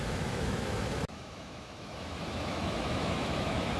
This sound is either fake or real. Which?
fake